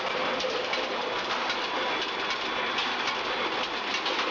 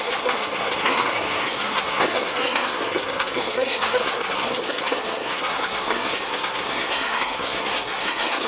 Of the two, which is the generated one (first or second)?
second